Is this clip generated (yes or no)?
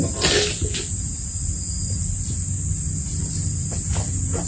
no